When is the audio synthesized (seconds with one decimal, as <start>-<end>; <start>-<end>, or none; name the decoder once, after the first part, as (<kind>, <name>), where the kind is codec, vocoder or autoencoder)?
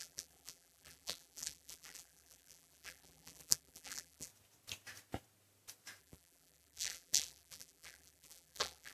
0.0-4.3 (vocoder, BigVGAN v2); 6.0-8.9